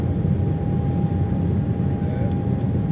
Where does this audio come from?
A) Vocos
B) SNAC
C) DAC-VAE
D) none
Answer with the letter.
D